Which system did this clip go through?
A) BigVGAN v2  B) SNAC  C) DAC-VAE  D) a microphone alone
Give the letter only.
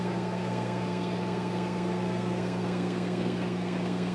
B